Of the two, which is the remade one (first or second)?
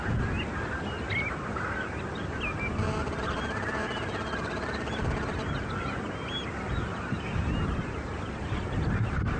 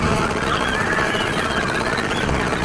second